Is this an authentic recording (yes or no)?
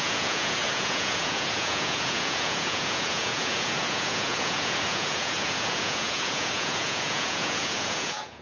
no